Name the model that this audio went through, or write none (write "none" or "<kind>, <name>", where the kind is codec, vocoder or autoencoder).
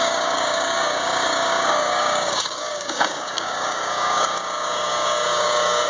codec, DAC